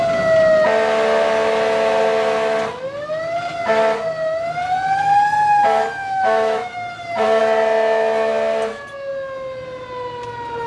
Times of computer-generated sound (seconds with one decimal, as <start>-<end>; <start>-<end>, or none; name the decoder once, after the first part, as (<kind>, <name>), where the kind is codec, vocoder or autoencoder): 6.0-7.4 (autoencoder, DAC-VAE)